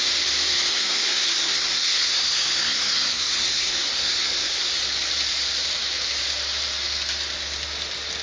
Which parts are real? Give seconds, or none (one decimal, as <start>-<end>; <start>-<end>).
0.0-0.7; 4.8-8.2